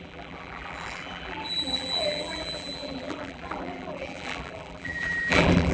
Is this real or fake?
fake